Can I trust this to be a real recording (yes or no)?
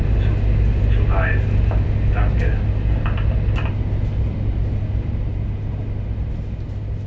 yes